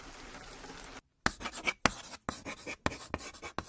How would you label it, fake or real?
real